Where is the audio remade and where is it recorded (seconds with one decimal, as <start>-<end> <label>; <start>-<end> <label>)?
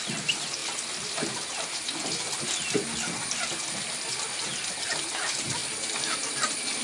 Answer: 0.0-0.6 remade; 0.6-4.7 recorded; 4.7-5.6 remade; 5.6-6.8 recorded